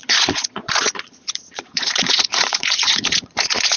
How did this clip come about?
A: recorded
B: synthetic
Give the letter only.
B